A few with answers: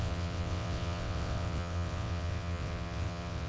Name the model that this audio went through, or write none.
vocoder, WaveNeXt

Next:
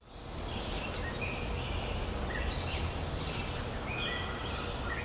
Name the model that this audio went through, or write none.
none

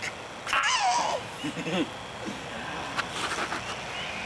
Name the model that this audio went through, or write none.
none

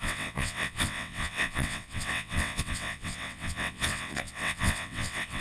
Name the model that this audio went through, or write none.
vocoder, WaveNeXt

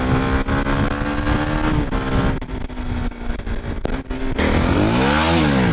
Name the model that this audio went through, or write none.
none